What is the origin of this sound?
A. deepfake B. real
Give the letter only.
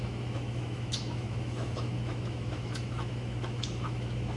A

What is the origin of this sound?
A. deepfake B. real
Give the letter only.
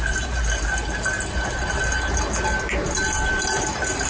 B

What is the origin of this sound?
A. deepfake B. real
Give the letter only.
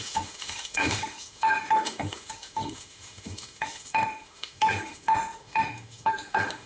A